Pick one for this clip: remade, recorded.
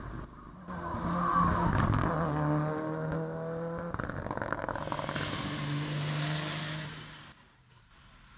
recorded